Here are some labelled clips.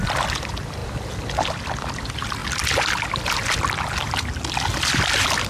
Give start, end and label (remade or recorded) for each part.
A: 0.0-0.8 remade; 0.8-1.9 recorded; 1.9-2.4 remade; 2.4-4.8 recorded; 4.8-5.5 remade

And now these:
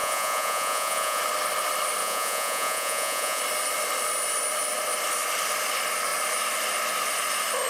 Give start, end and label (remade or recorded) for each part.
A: 0.0-1.2 remade; 1.2-2.0 recorded; 2.0-3.4 remade; 3.4-7.7 recorded

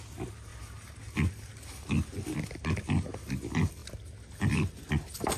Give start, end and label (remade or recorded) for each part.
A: 0.0-5.4 recorded

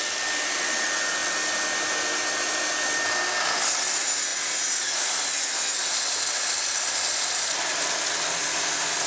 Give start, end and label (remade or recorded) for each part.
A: 0.0-4.3 recorded; 4.3-5.2 remade; 5.2-9.1 recorded